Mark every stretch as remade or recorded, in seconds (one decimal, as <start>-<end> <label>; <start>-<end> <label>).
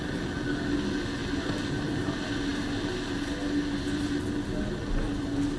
0.0-5.6 recorded